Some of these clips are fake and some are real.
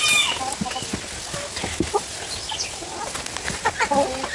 real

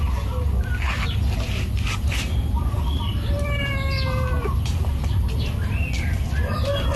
real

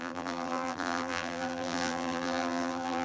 fake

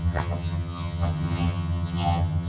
fake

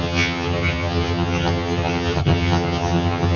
fake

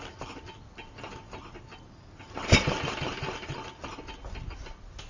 real